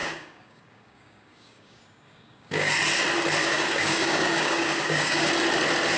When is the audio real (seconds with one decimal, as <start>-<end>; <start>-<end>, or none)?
2.7-3.4; 5.3-6.0